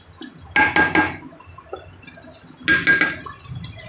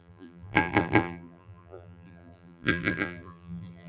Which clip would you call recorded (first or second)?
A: first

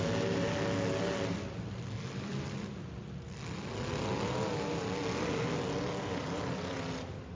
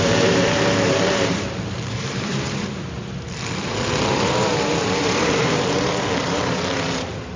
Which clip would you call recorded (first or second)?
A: first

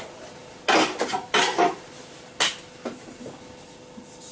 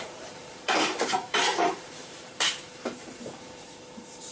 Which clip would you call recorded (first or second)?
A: first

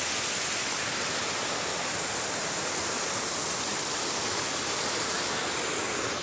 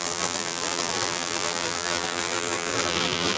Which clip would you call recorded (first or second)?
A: first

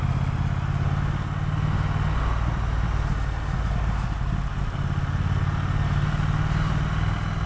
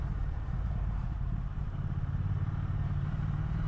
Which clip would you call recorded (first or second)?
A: first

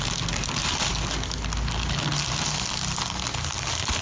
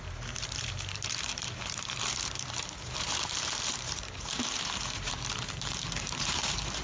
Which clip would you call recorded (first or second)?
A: first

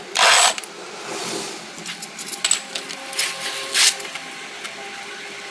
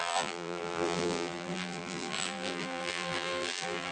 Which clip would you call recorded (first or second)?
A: first